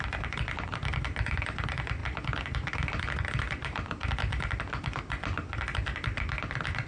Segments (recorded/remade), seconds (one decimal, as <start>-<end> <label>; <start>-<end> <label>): 0.0-6.9 recorded